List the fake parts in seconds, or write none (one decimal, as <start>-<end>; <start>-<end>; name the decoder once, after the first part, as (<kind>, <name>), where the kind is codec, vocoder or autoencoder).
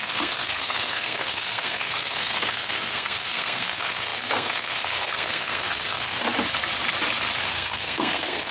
0.0-6.2 (codec, SNAC); 7.4-8.5